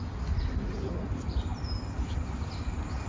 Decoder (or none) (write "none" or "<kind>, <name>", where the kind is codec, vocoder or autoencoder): none